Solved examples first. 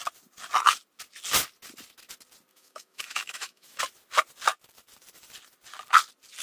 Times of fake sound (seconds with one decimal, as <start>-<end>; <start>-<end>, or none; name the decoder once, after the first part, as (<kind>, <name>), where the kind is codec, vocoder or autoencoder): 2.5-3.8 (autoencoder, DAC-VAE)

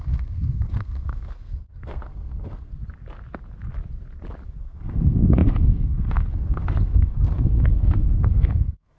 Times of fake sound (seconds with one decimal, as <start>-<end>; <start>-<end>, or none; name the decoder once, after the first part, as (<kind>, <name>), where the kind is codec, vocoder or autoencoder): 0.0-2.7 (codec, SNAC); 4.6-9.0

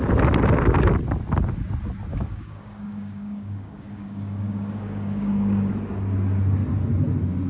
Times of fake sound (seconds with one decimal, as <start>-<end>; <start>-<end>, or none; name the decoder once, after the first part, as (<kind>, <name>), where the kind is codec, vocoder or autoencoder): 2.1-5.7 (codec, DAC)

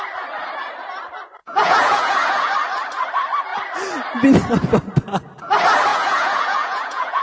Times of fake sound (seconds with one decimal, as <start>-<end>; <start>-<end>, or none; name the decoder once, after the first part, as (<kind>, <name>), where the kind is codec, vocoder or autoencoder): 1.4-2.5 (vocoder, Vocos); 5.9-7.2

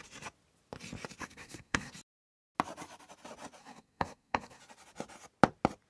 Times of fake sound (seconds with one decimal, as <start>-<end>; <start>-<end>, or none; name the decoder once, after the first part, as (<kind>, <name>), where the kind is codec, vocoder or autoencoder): 1.2-1.9 (codec, SNAC); 3.6-4.6

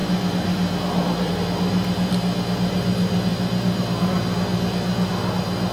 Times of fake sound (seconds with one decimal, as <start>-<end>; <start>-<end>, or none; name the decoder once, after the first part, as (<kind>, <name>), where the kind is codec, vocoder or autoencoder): none

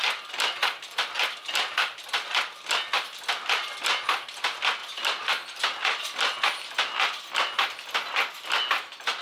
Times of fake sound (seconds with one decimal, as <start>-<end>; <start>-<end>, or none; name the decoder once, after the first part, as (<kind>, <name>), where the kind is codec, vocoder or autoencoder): none